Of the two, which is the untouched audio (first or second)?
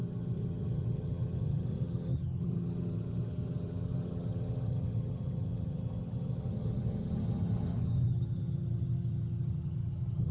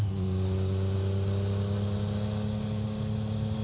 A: second